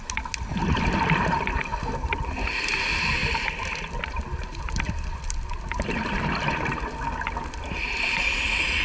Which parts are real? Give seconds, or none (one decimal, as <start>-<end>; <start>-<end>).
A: 0.0-0.5; 1.6-3.2; 6.9-8.8